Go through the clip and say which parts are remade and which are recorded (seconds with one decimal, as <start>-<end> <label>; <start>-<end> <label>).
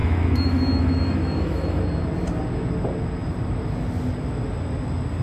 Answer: 0.0-1.8 remade; 1.8-5.2 recorded